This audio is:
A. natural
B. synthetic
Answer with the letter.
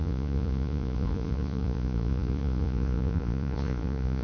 B